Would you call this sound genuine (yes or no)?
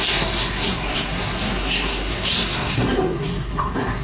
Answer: no